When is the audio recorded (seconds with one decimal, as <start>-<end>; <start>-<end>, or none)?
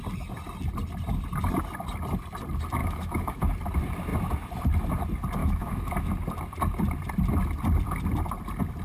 0.0-2.8; 3.4-5.4; 6.1-8.8